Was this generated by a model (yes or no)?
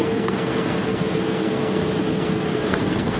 yes